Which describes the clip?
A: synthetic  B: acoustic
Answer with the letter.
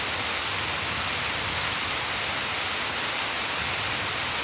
B